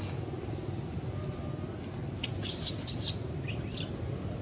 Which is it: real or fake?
real